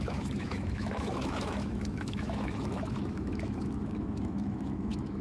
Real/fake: fake